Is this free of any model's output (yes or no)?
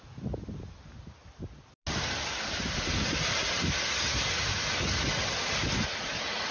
yes